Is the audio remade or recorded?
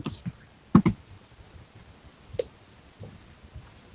recorded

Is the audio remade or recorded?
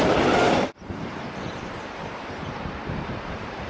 remade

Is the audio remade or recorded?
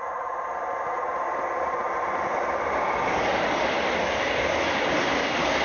remade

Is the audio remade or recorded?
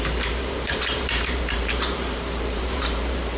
remade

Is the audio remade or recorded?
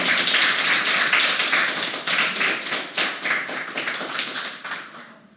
recorded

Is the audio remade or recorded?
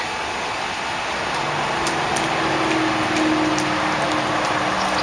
recorded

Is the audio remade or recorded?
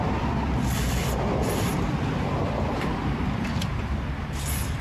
remade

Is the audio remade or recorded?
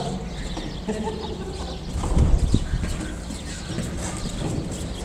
recorded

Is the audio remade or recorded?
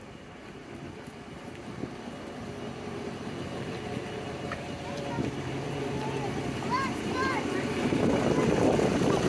remade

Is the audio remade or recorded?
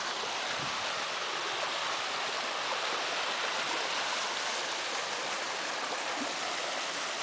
recorded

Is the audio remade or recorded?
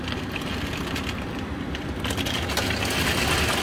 recorded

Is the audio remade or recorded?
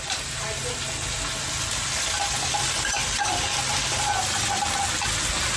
recorded